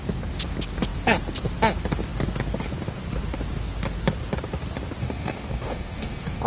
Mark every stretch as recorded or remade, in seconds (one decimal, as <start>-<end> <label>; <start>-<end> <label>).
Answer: 0.0-5.0 recorded; 5.0-6.5 remade